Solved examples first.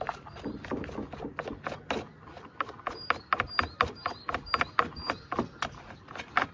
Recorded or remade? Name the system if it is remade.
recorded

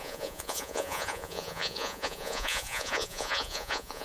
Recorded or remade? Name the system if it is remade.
remade, vocoder, Vocos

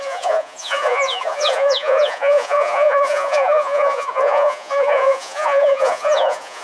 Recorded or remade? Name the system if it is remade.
remade, vocoder, Vocos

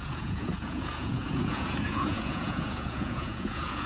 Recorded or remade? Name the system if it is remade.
remade, vocoder, Vocos